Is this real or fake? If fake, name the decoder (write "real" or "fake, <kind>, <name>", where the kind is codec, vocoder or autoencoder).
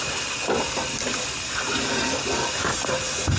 real